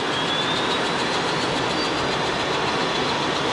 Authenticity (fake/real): real